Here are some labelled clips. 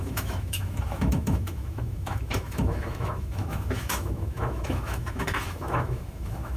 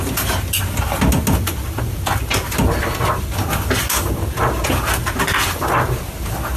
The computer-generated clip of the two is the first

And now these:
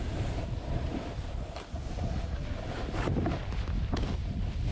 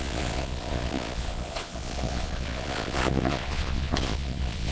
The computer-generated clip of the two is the second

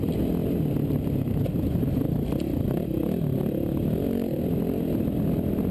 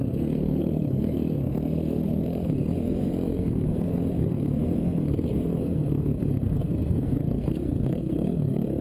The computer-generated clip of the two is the second